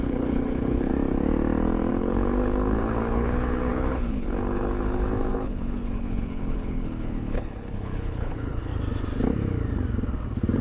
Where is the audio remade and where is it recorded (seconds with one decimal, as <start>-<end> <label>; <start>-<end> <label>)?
0.0-0.9 remade; 0.9-1.9 recorded; 1.9-8.7 remade; 8.7-10.6 recorded